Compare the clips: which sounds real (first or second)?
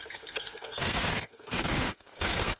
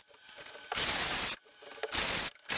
second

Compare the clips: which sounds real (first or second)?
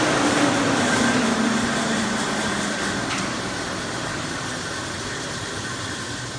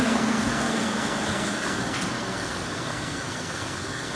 first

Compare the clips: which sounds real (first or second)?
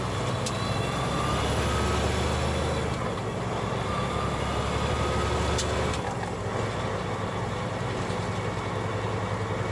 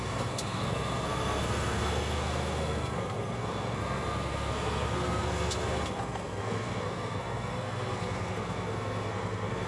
first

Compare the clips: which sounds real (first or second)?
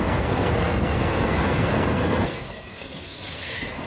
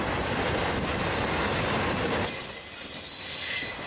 second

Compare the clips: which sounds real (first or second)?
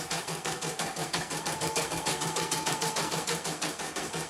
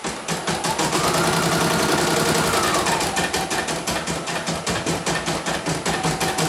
second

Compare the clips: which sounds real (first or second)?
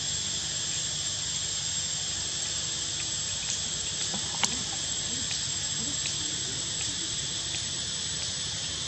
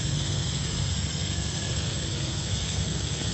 first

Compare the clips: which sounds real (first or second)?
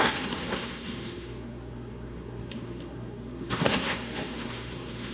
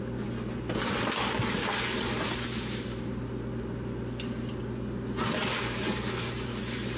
second